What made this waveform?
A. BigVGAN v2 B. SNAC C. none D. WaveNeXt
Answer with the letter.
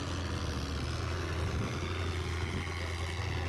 C